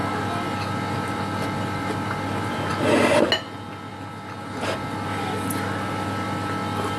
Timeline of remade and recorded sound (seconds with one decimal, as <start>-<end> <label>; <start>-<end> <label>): 0.0-7.0 recorded